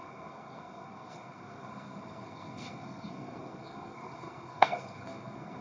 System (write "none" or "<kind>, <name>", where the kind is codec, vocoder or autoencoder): codec, SNAC